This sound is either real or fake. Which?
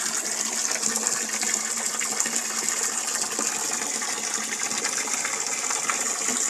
real